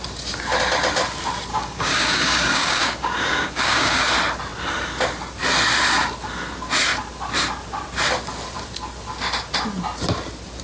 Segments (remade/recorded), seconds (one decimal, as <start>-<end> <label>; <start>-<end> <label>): 0.0-1.5 recorded; 1.5-4.1 remade; 4.1-10.6 recorded

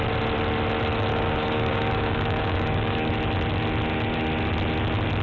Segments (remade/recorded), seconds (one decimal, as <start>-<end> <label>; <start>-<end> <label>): 0.0-1.1 recorded; 1.1-3.1 remade; 3.1-5.2 recorded

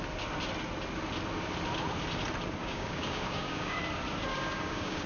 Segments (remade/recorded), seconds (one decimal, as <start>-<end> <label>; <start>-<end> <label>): 0.0-2.6 recorded; 2.6-3.8 remade; 3.8-4.3 recorded; 4.3-5.1 remade

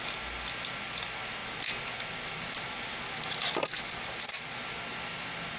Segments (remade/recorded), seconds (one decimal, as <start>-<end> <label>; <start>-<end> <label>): 0.0-5.6 recorded

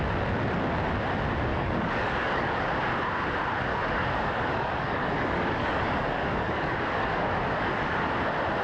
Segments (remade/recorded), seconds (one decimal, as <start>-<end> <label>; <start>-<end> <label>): 0.0-1.5 recorded; 1.5-2.7 remade; 2.7-3.7 recorded; 3.7-8.1 remade; 8.1-8.6 recorded

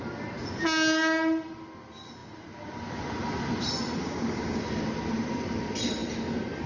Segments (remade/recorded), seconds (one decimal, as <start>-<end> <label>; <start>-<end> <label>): 0.0-4.0 recorded; 4.0-4.6 remade; 4.6-6.7 recorded

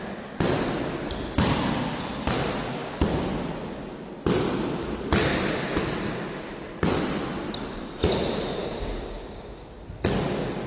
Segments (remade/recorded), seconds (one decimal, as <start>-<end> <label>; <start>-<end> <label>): 0.0-8.6 recorded; 8.6-9.8 remade; 9.8-10.7 recorded

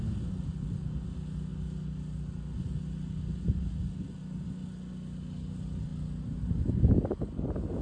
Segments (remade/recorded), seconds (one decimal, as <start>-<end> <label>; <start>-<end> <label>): 0.0-7.8 recorded